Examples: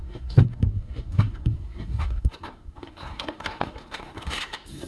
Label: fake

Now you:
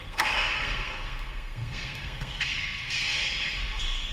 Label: fake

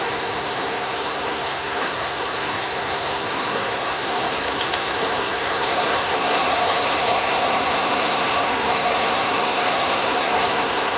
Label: fake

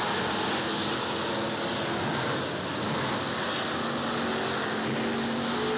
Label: real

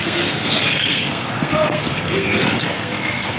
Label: fake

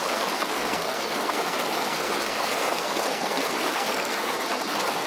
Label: fake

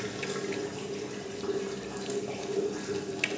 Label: real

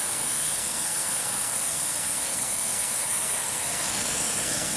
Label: fake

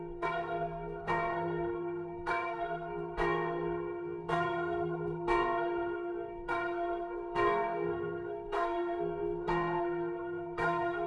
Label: fake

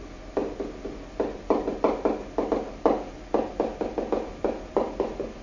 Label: real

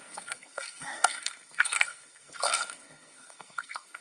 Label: fake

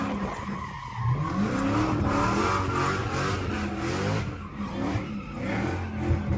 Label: real